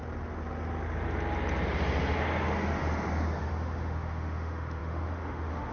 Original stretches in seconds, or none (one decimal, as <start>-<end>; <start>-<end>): 0.0-3.4